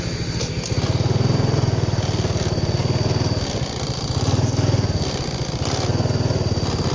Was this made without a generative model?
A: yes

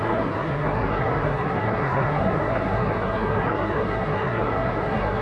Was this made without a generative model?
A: no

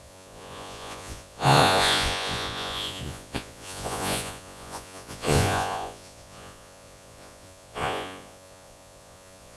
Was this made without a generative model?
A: no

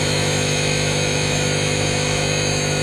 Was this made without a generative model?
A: no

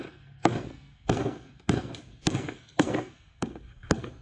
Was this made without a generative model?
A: no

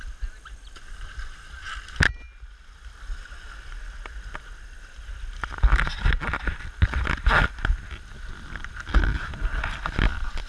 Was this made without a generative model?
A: yes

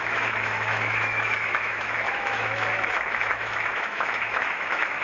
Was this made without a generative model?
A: no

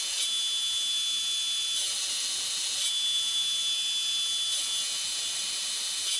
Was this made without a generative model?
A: yes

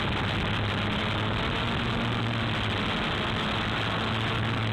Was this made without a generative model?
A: yes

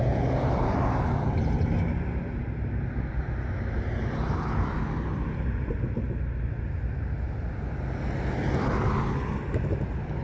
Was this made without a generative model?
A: yes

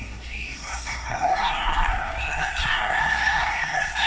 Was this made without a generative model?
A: no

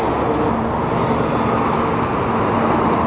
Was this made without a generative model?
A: yes